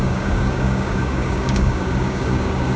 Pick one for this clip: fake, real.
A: fake